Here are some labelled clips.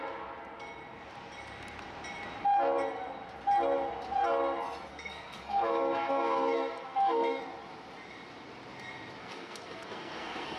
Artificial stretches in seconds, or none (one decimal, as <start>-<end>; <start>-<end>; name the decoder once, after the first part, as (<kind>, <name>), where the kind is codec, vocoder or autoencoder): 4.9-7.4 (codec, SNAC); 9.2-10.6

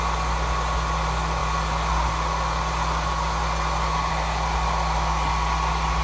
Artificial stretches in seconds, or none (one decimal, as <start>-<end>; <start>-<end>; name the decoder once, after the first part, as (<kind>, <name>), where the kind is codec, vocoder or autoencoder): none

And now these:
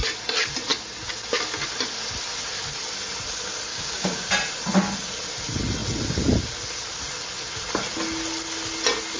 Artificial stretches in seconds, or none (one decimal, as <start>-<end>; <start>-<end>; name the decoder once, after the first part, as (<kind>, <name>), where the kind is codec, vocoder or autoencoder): 3.7-4.3 (codec, DAC)

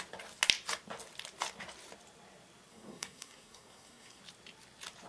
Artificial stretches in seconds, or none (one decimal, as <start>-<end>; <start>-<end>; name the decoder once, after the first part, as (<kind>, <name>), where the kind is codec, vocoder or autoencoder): 2.7-4.2 (codec, SNAC)

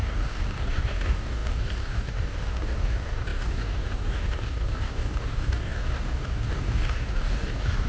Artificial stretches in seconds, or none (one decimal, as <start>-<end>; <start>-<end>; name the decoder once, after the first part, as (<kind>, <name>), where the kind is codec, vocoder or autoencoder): 0.0-7.9 (codec, DAC)